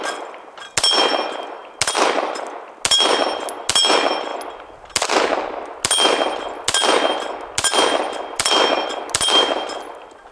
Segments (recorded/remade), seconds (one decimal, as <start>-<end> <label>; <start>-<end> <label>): 0.0-10.3 recorded

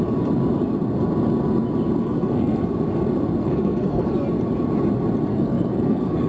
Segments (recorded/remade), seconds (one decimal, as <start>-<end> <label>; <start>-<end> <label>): 0.0-2.0 recorded; 2.0-2.6 remade; 2.6-3.4 recorded; 3.4-4.1 remade; 4.1-5.3 recorded; 5.3-6.3 remade

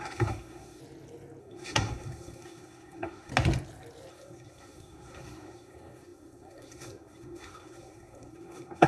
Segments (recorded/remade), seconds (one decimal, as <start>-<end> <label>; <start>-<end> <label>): 0.0-0.8 remade; 0.8-1.4 recorded; 1.4-3.3 remade; 3.3-4.1 recorded; 4.1-8.9 remade

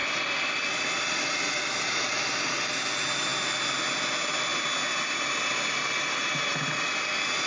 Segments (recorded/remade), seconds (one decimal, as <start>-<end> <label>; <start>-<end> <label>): 0.0-7.5 recorded

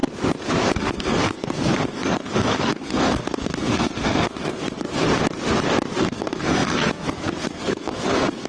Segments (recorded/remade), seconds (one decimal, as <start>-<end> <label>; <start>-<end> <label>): 0.0-0.8 recorded; 0.8-5.1 remade; 5.1-6.0 recorded; 6.0-8.5 remade

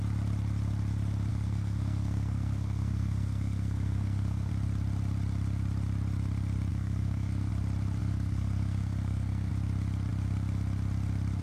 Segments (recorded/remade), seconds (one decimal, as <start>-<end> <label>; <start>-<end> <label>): 0.0-1.3 recorded; 1.3-4.5 remade; 4.5-6.7 recorded; 6.7-7.5 remade; 7.5-8.0 recorded; 8.0-9.5 remade; 9.5-11.4 recorded

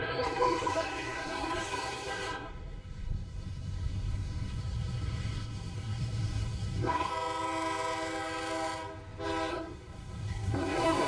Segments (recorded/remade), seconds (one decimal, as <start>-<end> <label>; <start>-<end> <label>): 0.0-7.1 remade; 7.1-9.5 recorded; 9.5-11.1 remade

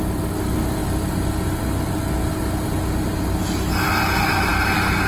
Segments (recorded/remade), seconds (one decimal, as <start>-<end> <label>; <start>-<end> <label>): 0.0-5.1 recorded